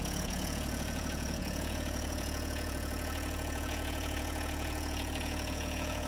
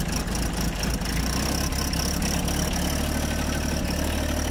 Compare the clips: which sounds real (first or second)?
second